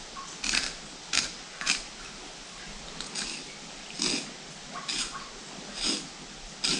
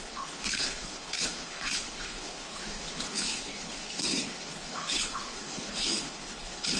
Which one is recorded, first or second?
first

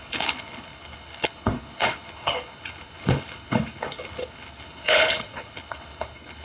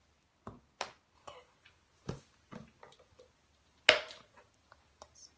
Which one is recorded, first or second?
second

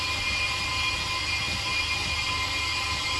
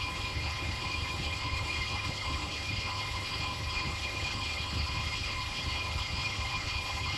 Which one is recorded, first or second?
first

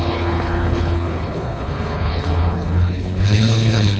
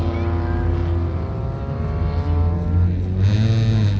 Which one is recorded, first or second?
second